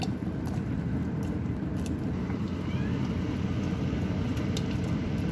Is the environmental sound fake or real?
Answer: real